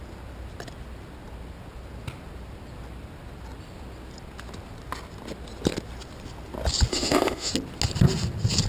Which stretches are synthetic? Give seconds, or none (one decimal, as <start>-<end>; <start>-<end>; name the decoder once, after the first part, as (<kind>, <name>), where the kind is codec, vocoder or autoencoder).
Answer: 6.9-7.5 (autoencoder, DAC-VAE)